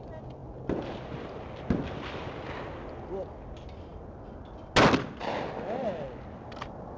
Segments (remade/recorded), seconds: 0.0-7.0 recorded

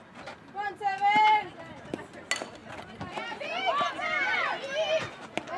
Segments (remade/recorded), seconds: 0.0-5.6 recorded